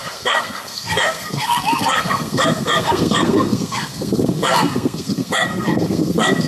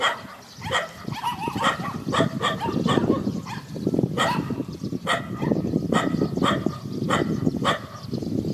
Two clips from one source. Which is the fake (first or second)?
first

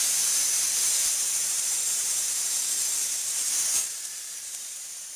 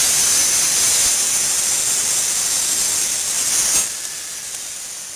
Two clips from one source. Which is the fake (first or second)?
first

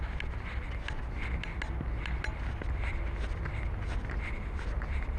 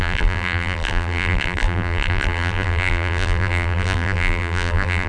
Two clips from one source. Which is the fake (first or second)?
second